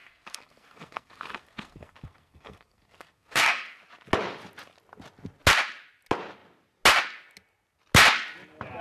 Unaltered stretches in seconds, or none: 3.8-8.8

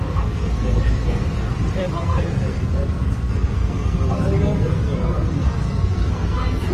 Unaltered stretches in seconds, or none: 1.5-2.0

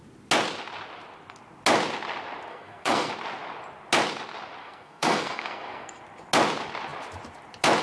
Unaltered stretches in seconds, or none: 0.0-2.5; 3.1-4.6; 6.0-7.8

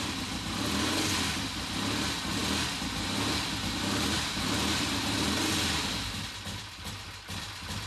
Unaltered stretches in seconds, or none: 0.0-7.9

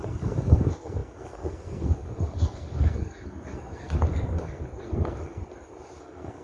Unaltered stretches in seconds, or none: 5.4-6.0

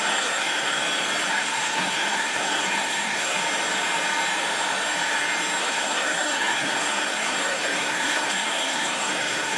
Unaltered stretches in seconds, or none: 0.8-1.3; 3.4-5.6